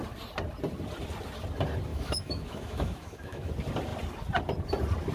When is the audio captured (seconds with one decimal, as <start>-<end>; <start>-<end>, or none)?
0.0-1.9; 3.5-5.1

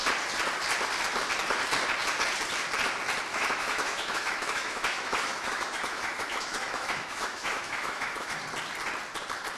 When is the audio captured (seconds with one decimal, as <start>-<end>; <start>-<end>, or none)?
0.0-3.3; 8.4-9.6